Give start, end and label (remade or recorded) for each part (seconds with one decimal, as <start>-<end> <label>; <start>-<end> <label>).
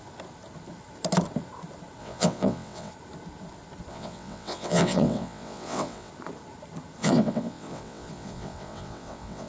0.0-2.0 recorded; 2.0-2.9 remade; 2.9-3.9 recorded; 3.9-6.1 remade; 6.1-7.0 recorded; 7.0-9.5 remade